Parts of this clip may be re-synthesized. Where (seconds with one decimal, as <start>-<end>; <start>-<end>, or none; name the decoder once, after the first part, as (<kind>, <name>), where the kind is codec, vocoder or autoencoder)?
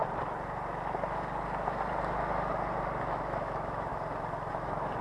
3.0-3.9 (autoencoder, DAC-VAE); 4.5-5.0